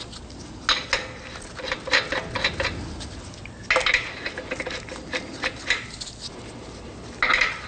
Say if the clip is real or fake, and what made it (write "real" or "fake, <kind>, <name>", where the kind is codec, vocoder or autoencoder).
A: real